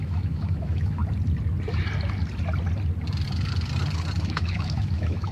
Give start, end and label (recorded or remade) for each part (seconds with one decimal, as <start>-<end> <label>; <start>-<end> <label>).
0.0-1.0 remade; 1.0-4.2 recorded; 4.2-5.3 remade